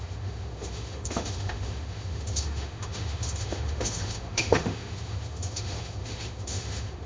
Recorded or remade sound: remade